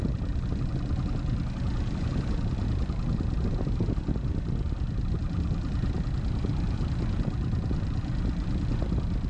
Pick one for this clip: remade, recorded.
recorded